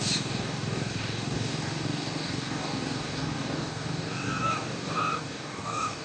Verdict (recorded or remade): remade